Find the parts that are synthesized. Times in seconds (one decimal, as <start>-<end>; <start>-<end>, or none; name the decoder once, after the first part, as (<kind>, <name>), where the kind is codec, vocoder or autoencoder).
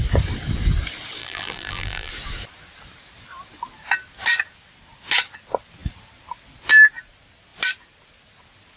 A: 1.2-2.1 (vocoder, BigVGAN v2)